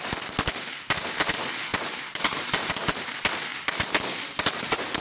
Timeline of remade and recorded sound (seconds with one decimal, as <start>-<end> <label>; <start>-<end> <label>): 0.0-1.7 recorded; 1.7-3.1 remade; 3.1-5.0 recorded